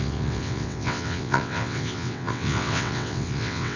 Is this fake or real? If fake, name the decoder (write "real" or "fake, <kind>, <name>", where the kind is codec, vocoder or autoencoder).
fake, vocoder, WaveNeXt